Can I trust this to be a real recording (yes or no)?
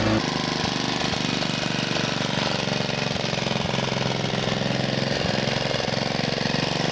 yes